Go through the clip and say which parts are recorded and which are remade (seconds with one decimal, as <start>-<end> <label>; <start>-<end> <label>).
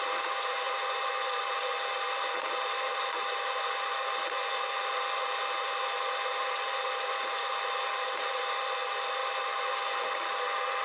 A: 0.0-10.8 recorded